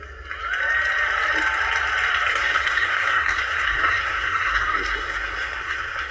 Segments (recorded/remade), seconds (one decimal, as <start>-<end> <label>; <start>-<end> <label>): 0.0-2.3 recorded; 2.3-6.1 remade